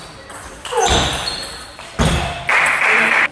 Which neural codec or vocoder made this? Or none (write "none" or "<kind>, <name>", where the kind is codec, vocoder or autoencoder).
none